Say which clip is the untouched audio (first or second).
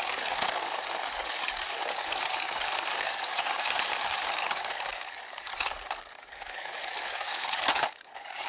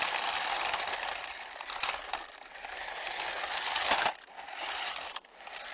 second